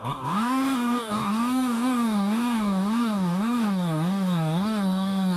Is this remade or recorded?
remade